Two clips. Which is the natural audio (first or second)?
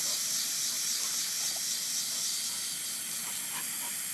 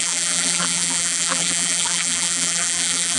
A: first